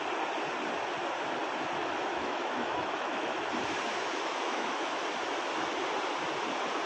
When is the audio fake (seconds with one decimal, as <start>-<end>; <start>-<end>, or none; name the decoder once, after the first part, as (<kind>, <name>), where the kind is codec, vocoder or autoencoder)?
1.8-3.5 (autoencoder, DAC-VAE); 3.9-5.0